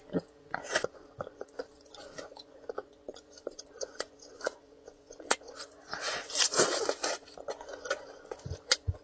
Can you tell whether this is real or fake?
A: fake